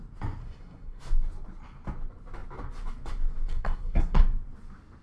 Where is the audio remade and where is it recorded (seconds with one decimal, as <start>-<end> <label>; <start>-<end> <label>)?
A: 0.0-0.4 recorded; 0.4-1.0 remade; 1.0-3.5 recorded; 3.5-4.2 remade; 4.2-5.0 recorded